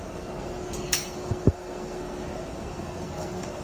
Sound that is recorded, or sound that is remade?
remade